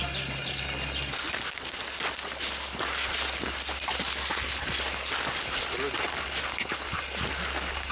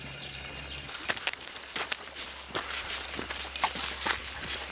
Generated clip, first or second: second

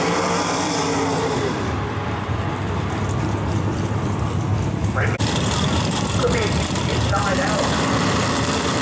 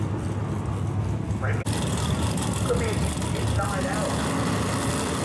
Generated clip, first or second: first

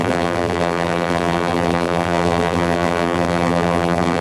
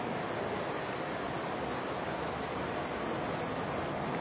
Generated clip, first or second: first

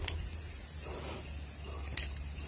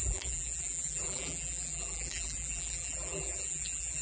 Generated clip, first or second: second